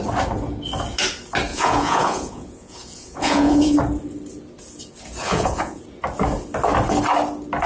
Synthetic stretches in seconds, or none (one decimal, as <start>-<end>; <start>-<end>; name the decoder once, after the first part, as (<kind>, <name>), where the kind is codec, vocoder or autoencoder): 1.5-3.8 (vocoder, Vocos); 5.2-5.8